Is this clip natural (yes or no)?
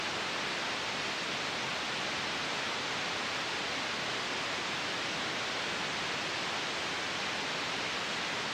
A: yes